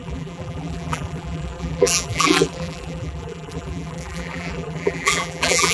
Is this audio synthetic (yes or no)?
yes